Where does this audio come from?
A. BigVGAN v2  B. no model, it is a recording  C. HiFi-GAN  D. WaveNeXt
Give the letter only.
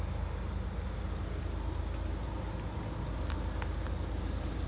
B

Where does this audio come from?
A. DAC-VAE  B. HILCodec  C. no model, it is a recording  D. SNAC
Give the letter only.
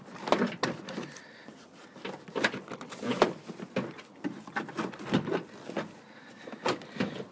C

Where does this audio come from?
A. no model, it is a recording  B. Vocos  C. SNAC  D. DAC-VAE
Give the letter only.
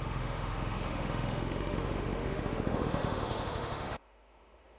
D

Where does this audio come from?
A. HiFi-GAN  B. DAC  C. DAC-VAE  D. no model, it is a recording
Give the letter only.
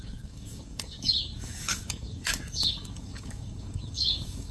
B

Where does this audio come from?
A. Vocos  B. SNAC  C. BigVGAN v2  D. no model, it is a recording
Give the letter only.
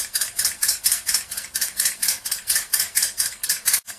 B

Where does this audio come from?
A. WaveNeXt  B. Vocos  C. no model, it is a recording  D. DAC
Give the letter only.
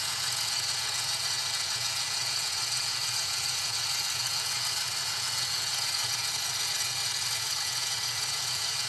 B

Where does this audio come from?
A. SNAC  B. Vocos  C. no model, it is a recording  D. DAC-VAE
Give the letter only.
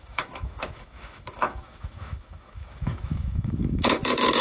D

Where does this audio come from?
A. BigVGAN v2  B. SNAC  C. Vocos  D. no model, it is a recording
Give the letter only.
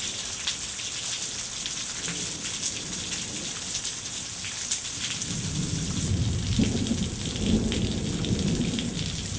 D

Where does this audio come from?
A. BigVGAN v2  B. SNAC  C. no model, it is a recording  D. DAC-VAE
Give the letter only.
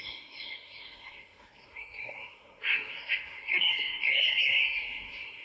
B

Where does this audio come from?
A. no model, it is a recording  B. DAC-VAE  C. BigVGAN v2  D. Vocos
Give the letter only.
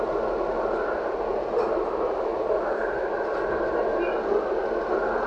A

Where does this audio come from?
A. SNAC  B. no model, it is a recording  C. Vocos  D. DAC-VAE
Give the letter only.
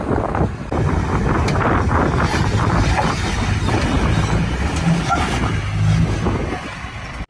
B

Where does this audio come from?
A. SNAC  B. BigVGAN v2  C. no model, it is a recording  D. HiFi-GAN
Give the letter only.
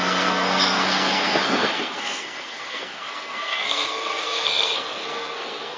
A